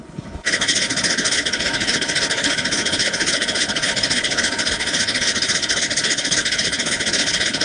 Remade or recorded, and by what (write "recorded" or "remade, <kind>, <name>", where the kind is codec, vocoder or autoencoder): remade, codec, HILCodec